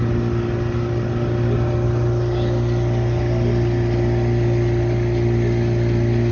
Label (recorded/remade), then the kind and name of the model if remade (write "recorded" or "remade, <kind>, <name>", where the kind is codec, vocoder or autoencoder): recorded